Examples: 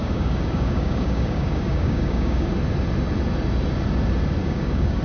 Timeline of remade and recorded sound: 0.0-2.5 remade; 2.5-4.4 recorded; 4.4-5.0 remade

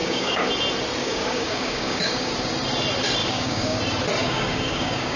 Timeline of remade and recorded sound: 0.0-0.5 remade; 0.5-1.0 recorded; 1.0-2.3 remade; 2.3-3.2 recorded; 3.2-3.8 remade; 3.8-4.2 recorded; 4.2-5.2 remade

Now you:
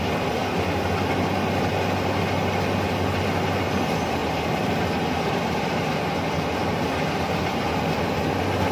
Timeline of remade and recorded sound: 0.0-8.7 recorded